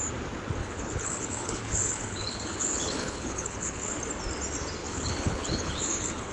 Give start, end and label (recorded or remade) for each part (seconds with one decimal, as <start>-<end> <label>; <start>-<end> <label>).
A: 0.0-0.6 recorded; 0.6-3.9 remade; 3.9-4.8 recorded; 4.8-6.3 remade